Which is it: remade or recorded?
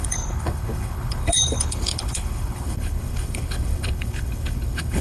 remade